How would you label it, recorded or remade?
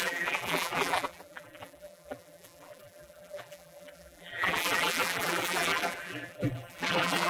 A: remade